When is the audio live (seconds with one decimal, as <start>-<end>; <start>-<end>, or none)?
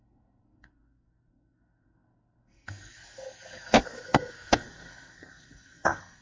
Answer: none